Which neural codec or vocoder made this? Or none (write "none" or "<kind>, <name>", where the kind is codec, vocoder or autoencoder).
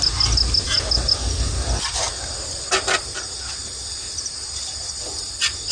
none